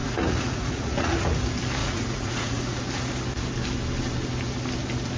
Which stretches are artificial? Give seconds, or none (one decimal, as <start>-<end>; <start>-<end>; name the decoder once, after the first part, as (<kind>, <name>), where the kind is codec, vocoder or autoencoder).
0.0-1.1 (vocoder, Vocos); 1.8-2.8